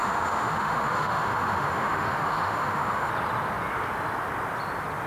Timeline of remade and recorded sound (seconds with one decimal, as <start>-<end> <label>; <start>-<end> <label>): 0.0-3.1 remade; 3.1-5.1 recorded